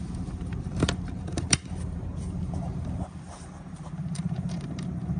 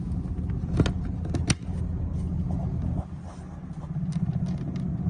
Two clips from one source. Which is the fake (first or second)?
first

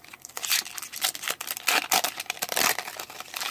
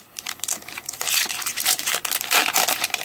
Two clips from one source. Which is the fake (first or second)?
second